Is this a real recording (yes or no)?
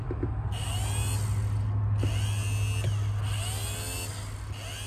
yes